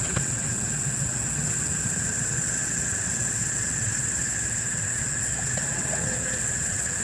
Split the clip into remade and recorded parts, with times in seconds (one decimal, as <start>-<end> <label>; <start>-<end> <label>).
0.0-7.0 remade